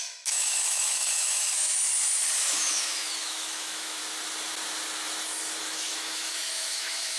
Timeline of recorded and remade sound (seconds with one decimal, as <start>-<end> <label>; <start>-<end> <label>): 0.0-1.8 remade; 1.8-2.4 recorded; 2.4-4.0 remade; 4.0-5.6 recorded; 5.6-7.2 remade